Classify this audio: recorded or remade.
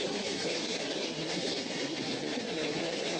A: remade